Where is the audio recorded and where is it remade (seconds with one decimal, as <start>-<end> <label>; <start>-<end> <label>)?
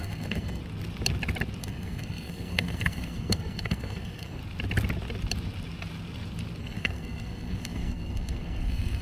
0.0-0.6 remade; 0.6-1.6 recorded; 1.6-4.4 remade; 4.4-6.6 recorded; 6.6-9.0 remade